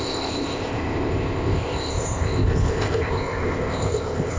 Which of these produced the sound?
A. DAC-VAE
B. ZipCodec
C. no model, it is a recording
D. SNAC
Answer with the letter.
B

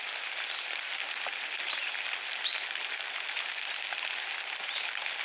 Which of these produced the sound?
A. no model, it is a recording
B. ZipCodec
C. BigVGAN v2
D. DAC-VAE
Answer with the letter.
A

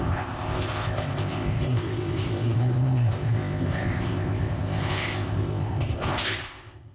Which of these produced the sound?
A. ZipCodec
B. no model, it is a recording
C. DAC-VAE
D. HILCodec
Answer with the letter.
A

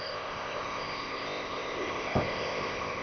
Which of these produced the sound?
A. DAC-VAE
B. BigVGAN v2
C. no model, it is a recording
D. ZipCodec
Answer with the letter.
D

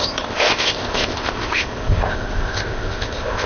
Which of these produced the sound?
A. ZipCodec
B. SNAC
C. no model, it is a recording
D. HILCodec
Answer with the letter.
A